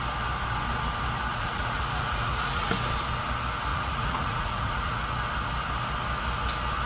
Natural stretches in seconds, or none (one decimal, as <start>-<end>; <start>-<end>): 0.0-1.3; 2.7-3.7; 5.0-6.9